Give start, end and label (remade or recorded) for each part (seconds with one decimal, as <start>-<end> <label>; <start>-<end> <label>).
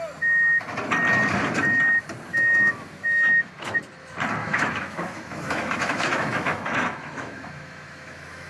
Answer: 0.0-2.3 recorded; 2.3-3.8 remade; 3.8-4.4 recorded; 4.4-8.5 remade